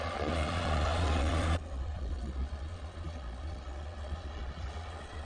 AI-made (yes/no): yes